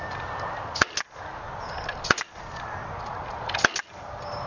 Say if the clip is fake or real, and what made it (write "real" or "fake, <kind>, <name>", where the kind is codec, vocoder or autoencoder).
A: real